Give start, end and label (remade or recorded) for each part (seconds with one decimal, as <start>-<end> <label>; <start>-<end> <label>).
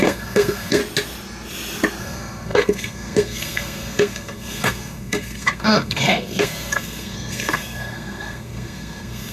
0.0-0.8 remade; 0.8-2.0 recorded; 2.0-9.3 remade